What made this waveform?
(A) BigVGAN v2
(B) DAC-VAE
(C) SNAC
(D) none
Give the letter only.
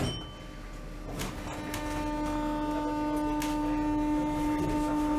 D